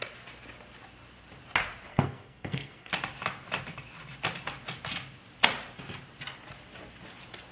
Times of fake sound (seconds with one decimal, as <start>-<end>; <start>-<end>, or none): 1.9-2.9